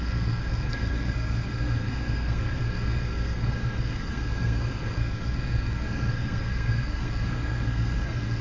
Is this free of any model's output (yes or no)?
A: no